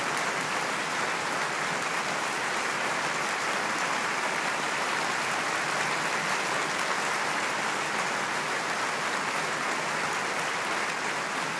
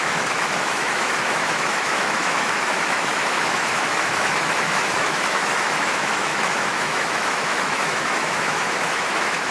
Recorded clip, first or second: first